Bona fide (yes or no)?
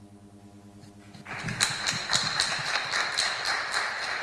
yes